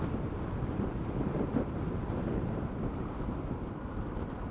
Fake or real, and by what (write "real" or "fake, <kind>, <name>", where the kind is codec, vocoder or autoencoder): real